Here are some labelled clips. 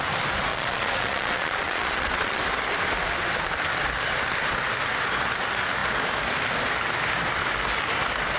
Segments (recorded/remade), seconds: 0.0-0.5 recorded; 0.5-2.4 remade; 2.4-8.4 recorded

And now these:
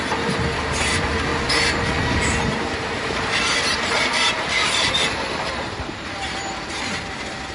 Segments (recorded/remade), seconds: 0.0-1.3 remade; 1.3-2.2 recorded; 2.2-7.5 remade

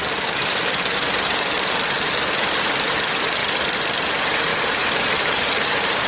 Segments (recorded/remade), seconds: 0.0-0.4 recorded; 0.4-1.9 remade; 1.9-4.5 recorded; 4.5-6.1 remade

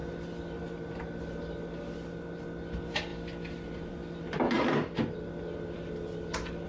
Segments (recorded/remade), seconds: 0.0-2.4 remade; 2.4-3.1 recorded; 3.1-6.7 remade

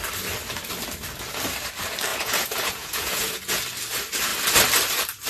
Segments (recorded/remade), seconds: 0.0-2.1 recorded; 2.1-3.6 remade; 3.6-5.3 recorded